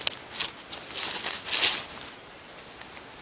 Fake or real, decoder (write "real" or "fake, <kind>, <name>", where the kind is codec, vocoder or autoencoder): real